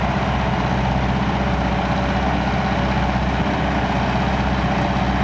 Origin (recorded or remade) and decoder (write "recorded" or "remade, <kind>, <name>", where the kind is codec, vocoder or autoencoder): recorded